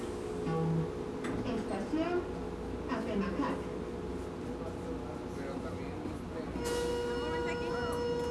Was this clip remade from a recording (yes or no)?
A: no